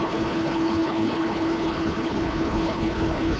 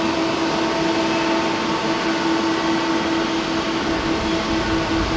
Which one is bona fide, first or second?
second